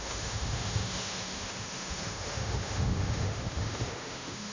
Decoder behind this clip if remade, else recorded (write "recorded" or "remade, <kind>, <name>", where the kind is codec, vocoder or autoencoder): remade, autoencoder, DAC-VAE